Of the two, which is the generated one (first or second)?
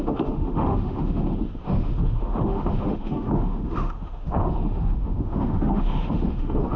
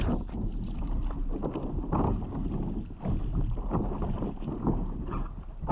first